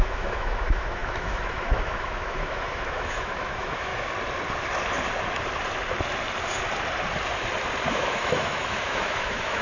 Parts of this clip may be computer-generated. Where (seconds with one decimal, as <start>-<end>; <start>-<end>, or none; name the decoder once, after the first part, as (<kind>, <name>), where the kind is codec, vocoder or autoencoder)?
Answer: 0.0-3.9 (autoencoder, DAC-VAE); 7.9-9.6